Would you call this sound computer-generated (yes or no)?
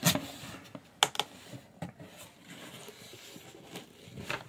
no